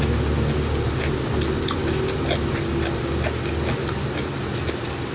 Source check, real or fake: real